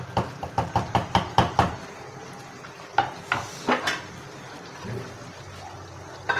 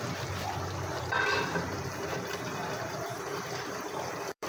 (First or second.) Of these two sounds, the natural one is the first